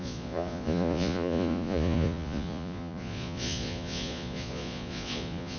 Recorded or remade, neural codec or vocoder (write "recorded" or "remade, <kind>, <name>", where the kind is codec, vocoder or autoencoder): remade, vocoder, Vocos